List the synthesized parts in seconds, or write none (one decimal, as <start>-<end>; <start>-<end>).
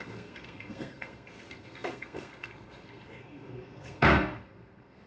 0.0-5.1